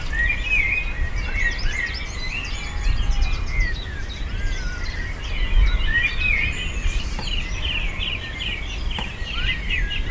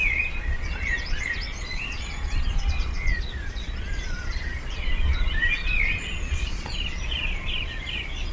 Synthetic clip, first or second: second